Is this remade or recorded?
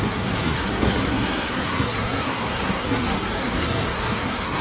remade